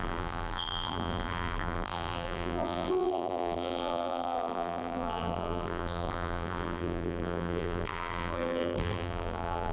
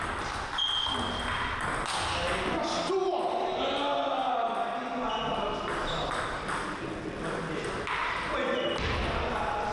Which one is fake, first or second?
first